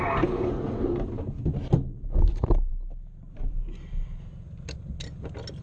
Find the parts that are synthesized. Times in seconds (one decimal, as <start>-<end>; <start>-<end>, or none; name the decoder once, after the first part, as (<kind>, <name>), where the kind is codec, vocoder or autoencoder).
none